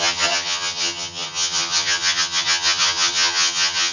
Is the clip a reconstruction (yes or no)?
yes